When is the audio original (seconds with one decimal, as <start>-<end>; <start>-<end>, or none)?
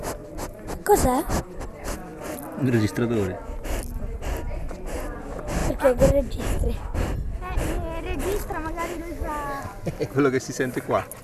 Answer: 0.0-11.2